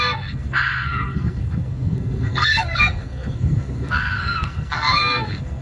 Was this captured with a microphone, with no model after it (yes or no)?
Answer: no